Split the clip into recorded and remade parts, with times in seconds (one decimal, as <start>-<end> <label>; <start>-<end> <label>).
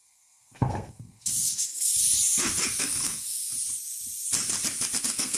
0.0-2.0 remade; 2.0-2.8 recorded; 2.8-3.5 remade; 3.5-5.0 recorded; 5.0-5.4 remade